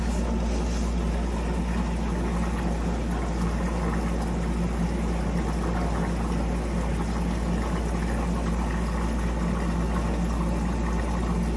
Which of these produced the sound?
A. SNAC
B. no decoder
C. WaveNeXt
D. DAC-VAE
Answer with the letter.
B